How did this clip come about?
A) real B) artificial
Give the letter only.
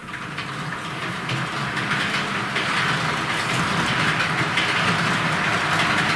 A